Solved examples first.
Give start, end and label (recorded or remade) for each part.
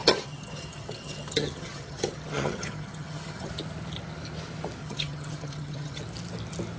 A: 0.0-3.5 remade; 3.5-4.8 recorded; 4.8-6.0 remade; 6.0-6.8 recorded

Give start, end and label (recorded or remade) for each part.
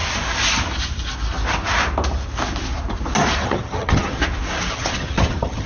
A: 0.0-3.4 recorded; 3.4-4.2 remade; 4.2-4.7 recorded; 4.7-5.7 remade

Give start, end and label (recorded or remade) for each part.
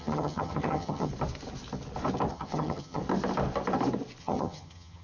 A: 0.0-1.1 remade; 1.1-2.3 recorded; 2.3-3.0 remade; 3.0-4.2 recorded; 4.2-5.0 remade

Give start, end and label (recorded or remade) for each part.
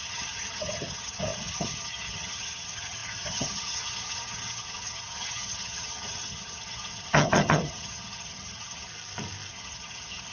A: 0.0-8.9 remade; 8.9-9.5 recorded; 9.5-10.3 remade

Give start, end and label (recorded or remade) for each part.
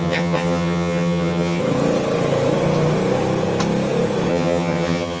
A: 0.0-1.6 remade; 1.6-4.3 recorded; 4.3-5.2 remade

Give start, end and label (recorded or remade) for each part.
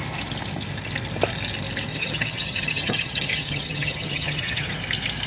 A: 0.0-1.9 recorded; 1.9-4.8 remade; 4.8-5.3 recorded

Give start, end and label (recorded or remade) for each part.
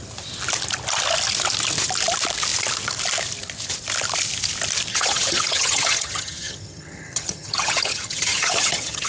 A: 0.0-4.9 recorded; 4.9-9.1 remade